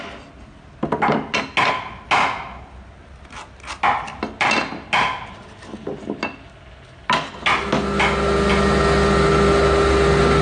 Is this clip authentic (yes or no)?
yes